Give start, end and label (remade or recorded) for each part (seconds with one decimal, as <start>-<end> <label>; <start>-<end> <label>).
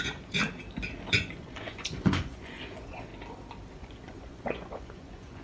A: 0.0-0.4 remade; 0.4-1.1 recorded; 1.1-3.1 remade; 3.1-3.7 recorded; 3.7-5.4 remade